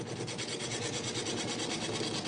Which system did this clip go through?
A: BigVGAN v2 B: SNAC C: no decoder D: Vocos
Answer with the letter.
C